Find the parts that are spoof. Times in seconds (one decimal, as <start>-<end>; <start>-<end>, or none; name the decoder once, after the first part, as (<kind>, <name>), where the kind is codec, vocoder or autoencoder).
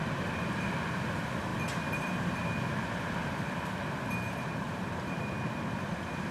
1.5-5.3 (vocoder, BigVGAN v2)